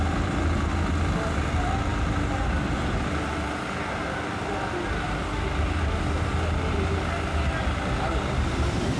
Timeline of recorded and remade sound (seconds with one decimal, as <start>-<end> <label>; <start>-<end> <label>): 0.0-9.0 recorded